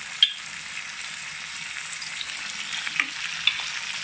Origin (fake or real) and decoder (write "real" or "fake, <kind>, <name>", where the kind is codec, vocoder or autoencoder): real